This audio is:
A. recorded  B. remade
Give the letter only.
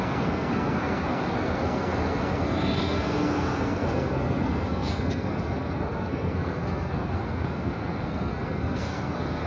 B